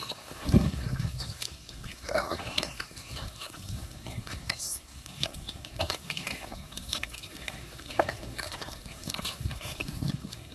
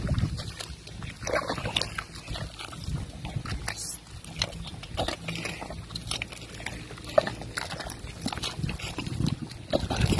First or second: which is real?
second